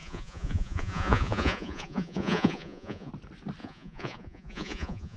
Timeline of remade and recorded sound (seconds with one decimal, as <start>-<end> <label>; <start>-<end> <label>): 0.0-3.1 remade; 3.1-3.6 recorded; 3.6-5.2 remade